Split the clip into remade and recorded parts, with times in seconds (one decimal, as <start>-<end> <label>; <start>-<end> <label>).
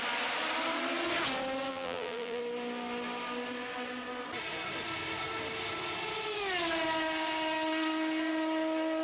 0.0-1.7 recorded; 1.7-2.4 remade; 2.4-9.0 recorded